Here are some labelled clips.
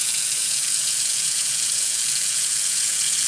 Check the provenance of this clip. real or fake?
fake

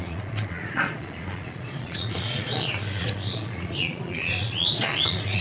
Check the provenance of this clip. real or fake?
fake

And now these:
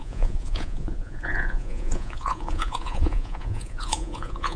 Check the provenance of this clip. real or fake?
fake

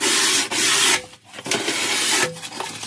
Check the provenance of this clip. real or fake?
real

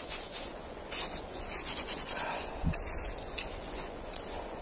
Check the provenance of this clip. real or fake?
fake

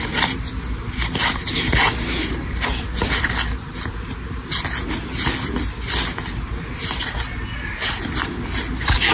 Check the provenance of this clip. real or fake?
real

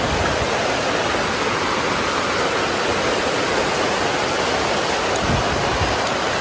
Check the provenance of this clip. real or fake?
real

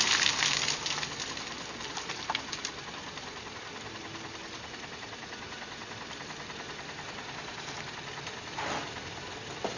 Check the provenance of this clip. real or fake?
real